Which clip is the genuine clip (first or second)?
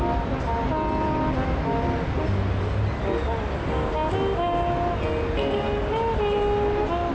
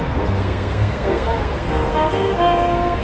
first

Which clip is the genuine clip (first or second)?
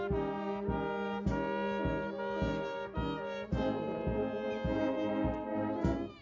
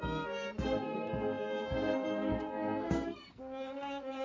first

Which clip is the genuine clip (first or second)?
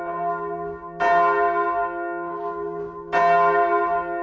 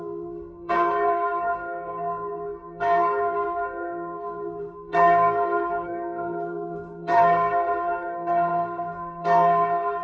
first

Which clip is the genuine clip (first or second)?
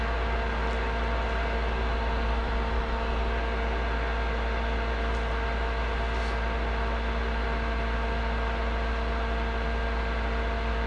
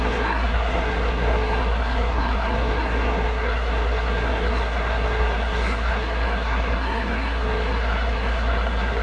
first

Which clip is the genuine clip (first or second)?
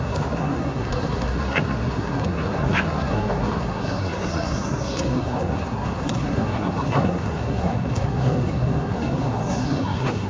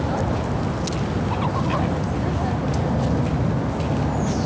second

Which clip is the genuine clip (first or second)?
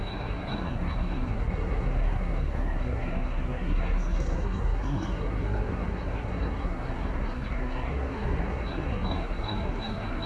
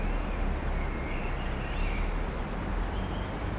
second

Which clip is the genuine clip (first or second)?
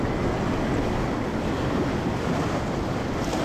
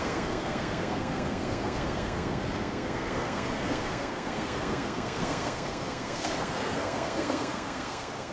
first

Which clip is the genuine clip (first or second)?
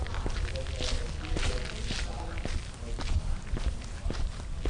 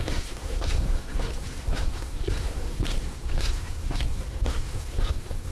first